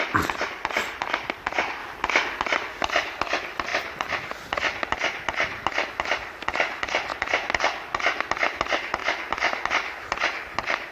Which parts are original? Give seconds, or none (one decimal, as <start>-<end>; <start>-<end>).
0.0-10.9